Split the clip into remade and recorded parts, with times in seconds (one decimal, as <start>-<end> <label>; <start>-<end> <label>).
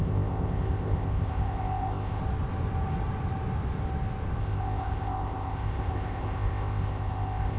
0.0-2.2 remade; 2.2-4.4 recorded; 4.4-7.6 remade